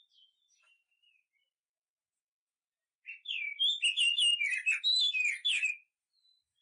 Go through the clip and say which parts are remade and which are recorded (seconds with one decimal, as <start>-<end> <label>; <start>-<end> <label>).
0.0-3.5 remade; 3.5-5.1 recorded; 5.1-6.6 remade